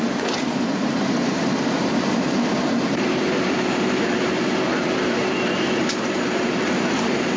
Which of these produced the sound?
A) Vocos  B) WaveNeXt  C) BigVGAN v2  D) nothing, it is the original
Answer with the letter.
C